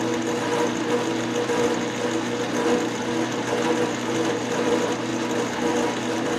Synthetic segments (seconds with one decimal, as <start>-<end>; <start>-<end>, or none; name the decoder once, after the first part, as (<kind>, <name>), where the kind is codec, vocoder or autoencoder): 0.0-0.5 (vocoder, BigVGAN v2); 4.3-5.1; 6.0-6.4